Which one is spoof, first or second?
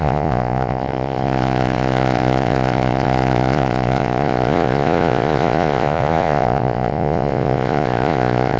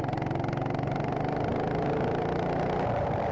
first